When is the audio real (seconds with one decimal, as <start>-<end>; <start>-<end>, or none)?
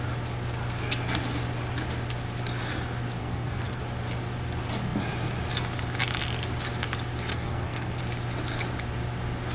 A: 0.0-3.2; 3.8-7.3; 8.0-9.5